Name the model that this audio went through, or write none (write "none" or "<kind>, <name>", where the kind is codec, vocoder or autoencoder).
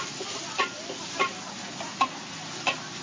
none